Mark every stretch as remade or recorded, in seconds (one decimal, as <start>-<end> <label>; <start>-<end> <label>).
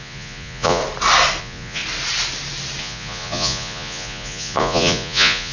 0.0-0.8 remade; 0.8-1.4 recorded; 1.4-1.8 remade; 1.8-2.8 recorded; 2.8-5.5 remade